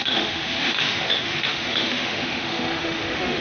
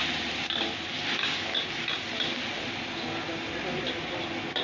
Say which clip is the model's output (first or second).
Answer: first